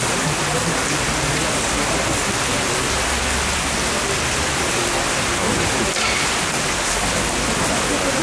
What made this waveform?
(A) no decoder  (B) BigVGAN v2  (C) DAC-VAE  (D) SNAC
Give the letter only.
A